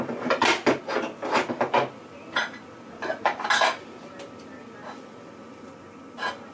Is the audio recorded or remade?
recorded